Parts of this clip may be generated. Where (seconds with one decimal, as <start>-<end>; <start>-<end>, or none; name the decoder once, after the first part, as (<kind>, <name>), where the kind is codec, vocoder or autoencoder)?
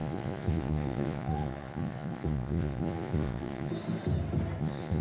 0.0-3.7 (vocoder, Vocos); 4.6-5.0